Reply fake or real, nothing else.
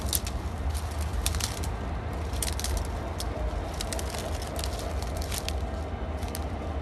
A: real